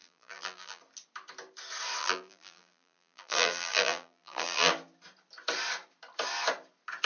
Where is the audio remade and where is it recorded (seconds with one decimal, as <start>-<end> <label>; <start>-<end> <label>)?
0.0-0.8 remade; 0.8-2.0 recorded; 2.0-4.7 remade; 4.7-7.1 recorded